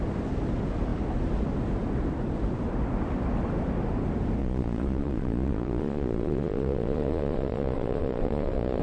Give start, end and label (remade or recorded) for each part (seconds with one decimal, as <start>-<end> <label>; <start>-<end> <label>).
0.0-4.4 recorded; 4.4-8.8 remade